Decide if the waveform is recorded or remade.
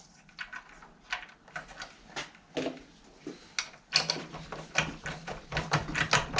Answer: recorded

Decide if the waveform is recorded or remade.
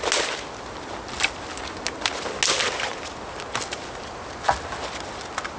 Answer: recorded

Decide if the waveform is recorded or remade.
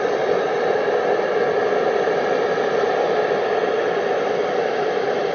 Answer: recorded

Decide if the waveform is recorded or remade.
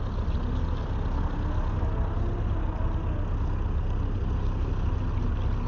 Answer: recorded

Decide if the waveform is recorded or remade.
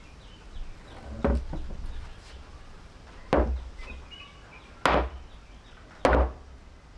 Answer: recorded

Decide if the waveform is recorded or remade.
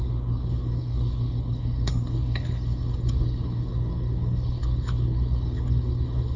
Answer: remade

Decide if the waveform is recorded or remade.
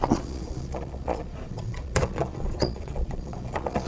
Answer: remade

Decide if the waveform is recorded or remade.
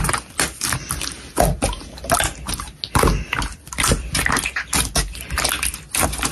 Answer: recorded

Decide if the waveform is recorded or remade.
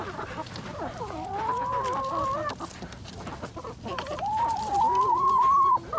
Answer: recorded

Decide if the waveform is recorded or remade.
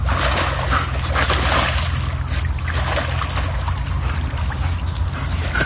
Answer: recorded